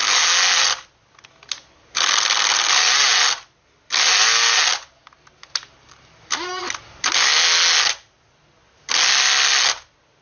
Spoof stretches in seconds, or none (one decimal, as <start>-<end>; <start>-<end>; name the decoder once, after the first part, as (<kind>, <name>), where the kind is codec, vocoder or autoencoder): none